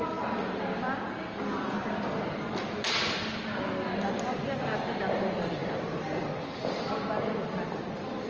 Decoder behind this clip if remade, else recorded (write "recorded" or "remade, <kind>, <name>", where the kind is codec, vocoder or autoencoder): recorded